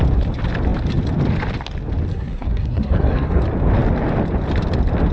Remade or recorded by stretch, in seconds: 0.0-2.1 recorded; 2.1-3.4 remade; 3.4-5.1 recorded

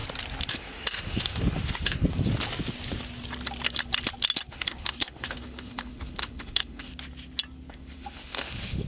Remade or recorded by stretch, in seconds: 0.0-0.5 recorded; 0.5-2.0 remade; 2.0-4.5 recorded; 4.5-6.9 remade; 6.9-7.7 recorded; 7.7-8.9 remade